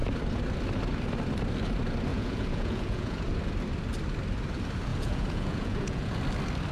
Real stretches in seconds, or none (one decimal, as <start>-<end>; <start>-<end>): 0.0-2.1; 3.3-4.9; 6.2-6.7